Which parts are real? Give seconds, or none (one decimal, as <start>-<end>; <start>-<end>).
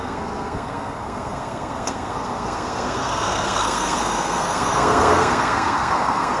none